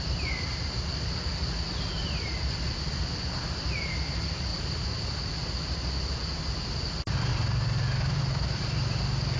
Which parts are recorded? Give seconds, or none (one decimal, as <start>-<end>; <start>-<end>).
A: 0.0-9.4